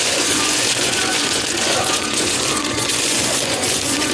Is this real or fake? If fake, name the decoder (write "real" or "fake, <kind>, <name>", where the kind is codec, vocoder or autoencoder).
fake, vocoder, Vocos